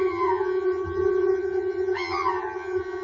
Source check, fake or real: fake